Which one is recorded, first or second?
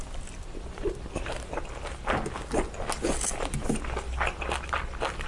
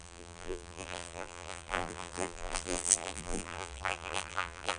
first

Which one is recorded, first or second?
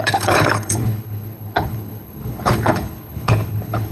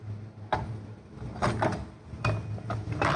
second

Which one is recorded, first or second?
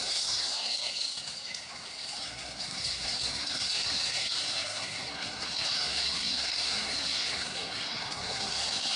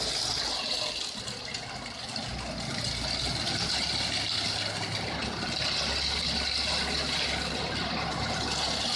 second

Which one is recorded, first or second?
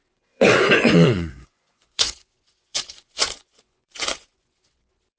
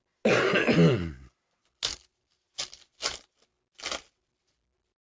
second